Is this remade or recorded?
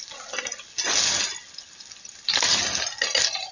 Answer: recorded